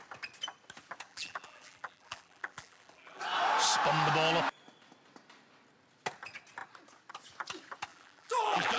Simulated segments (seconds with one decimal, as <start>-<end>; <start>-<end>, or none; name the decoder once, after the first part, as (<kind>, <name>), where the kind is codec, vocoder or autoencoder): 1.1-3.2 (vocoder, BigVGAN v2); 7.9-8.8